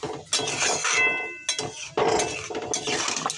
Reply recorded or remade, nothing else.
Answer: recorded